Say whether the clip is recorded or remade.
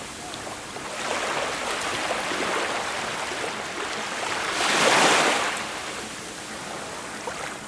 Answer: recorded